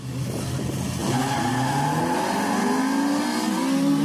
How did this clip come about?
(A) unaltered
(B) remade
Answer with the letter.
A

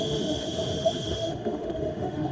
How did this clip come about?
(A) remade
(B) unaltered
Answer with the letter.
A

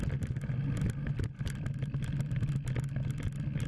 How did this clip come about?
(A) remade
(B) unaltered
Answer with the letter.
B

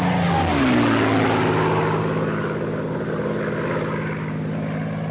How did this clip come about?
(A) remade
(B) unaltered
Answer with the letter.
B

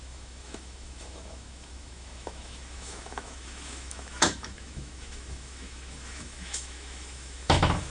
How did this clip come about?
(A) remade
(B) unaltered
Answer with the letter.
A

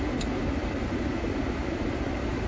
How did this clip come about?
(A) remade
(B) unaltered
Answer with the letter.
B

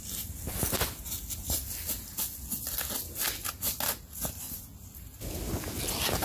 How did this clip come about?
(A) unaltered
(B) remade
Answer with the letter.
A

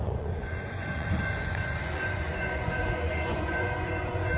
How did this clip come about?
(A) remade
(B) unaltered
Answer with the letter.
A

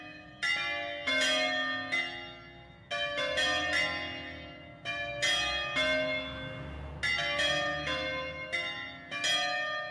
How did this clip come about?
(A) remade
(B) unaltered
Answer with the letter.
B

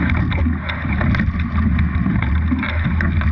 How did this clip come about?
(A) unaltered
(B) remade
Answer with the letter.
A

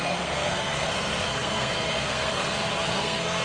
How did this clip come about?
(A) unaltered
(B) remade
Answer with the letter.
B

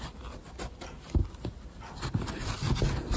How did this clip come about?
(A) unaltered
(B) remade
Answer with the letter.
A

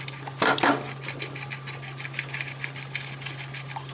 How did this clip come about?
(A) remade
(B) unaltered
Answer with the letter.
B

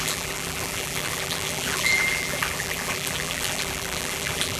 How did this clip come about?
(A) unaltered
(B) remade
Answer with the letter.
B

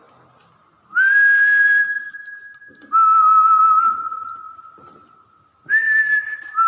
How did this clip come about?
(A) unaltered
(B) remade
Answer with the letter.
A